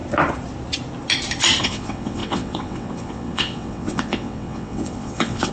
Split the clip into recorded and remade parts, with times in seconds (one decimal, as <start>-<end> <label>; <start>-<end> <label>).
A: 0.0-1.6 recorded; 1.6-5.5 remade